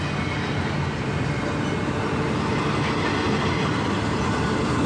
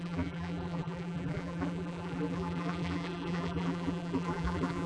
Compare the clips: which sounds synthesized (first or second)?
second